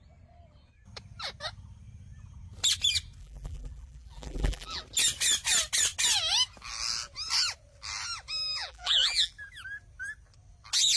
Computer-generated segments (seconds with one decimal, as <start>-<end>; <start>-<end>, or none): 3.2-4.8; 8.6-9.3